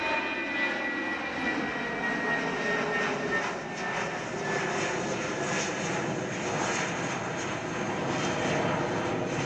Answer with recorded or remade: recorded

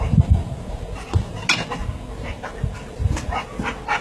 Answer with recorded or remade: recorded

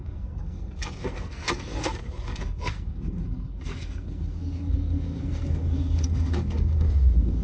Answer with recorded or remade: remade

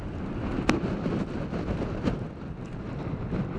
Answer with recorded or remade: recorded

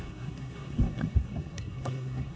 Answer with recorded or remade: remade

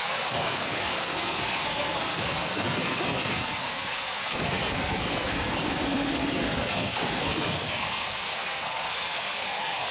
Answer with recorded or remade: remade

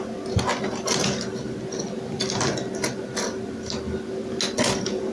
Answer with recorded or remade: recorded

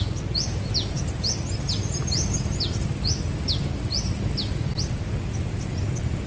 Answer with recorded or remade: recorded